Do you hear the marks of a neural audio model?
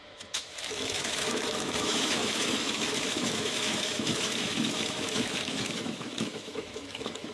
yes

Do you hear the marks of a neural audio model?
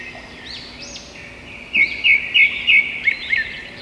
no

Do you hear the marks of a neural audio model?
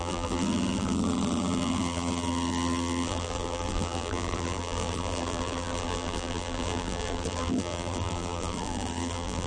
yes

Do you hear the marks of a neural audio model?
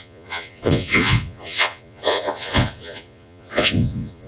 yes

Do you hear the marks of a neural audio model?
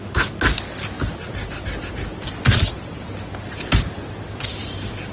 no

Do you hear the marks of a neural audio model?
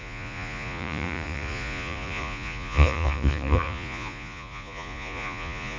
yes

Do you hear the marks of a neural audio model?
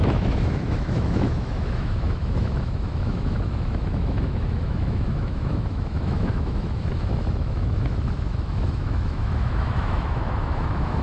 yes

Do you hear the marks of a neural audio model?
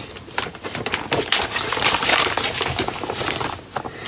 no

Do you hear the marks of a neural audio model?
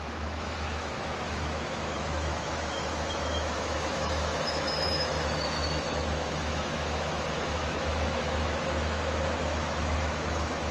yes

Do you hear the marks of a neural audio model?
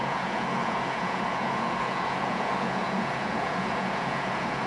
yes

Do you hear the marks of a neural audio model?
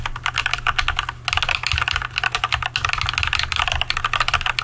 no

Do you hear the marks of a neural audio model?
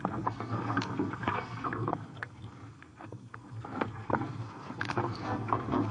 yes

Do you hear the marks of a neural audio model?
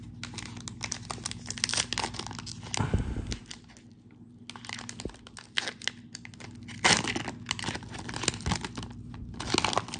no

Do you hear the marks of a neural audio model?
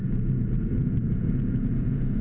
yes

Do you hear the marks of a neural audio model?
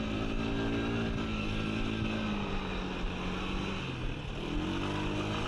no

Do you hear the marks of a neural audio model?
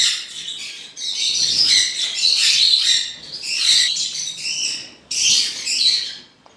yes